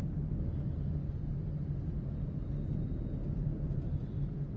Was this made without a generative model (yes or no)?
yes